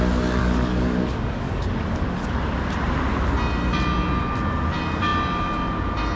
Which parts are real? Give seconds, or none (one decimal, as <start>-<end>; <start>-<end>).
0.0-0.4; 2.4-6.2